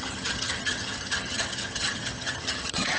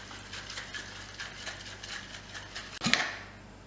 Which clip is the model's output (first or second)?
first